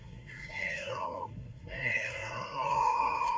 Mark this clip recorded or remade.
remade